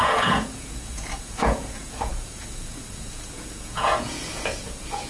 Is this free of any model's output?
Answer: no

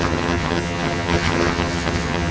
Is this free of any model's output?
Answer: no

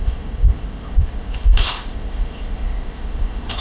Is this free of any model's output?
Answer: no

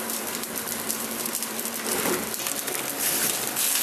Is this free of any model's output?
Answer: no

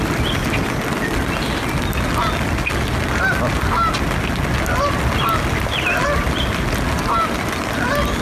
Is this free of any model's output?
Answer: yes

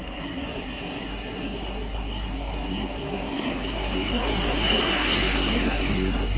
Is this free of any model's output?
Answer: no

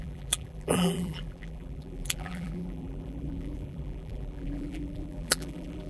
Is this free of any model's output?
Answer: no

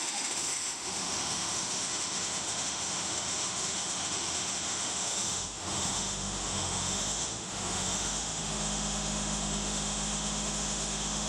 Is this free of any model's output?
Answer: no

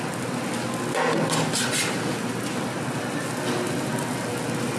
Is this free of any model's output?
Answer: yes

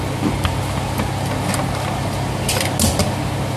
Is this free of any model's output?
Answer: yes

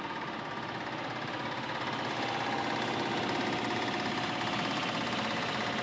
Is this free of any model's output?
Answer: yes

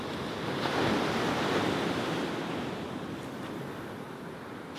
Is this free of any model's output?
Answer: yes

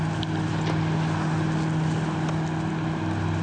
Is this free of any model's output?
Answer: yes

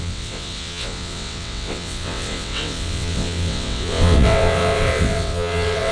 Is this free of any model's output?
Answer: no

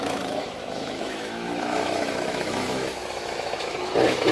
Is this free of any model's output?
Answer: no